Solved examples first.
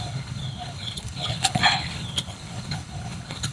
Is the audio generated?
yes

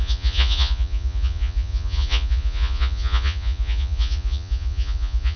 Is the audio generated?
yes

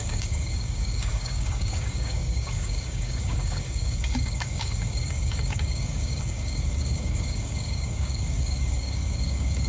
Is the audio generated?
yes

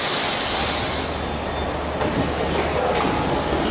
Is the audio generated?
no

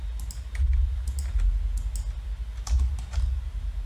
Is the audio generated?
no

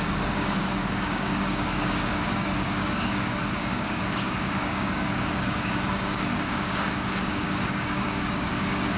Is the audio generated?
yes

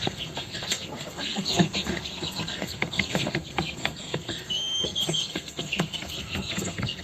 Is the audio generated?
yes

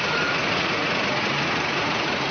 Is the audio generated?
yes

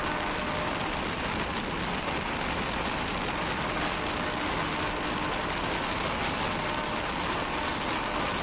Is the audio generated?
no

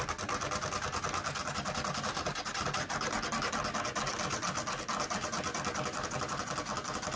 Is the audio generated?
no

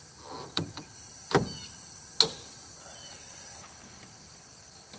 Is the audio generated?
no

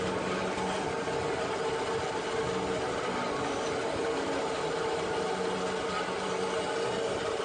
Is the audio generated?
no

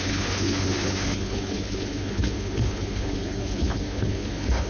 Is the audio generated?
yes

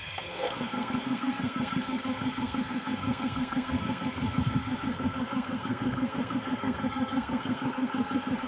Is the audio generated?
yes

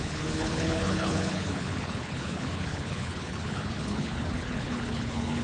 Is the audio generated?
yes